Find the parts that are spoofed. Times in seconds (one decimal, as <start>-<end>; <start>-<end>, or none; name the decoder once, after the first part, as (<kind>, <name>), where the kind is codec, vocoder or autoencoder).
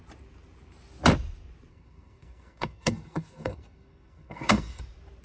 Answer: 1.7-4.8 (codec, SNAC)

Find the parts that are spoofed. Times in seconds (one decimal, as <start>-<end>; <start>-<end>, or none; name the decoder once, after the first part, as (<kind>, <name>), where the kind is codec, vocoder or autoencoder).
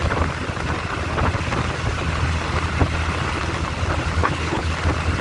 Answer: 4.2-4.7 (codec, HILCodec)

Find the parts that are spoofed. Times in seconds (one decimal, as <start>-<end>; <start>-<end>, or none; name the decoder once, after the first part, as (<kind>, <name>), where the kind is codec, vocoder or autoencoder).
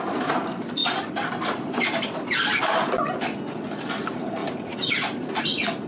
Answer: 4.4-5.4 (vocoder, BigVGAN v2)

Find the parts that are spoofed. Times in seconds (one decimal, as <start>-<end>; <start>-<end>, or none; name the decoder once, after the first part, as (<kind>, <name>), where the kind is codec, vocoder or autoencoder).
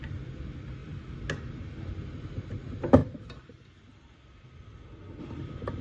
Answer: none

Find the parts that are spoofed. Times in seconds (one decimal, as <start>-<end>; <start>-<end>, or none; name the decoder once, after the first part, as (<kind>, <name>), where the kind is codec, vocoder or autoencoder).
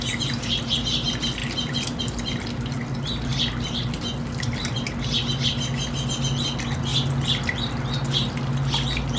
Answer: 1.4-2.0 (vocoder, BigVGAN v2)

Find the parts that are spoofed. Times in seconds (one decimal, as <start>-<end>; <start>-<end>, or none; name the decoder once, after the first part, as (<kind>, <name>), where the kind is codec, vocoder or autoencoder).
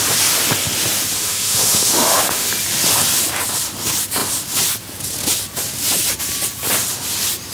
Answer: 1.2-2.5 (autoencoder, DAC-VAE)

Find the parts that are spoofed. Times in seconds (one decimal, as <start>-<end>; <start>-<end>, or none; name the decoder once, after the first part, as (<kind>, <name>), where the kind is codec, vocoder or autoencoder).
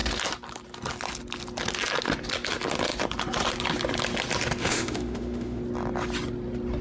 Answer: 4.6-5.6 (autoencoder, DAC-VAE)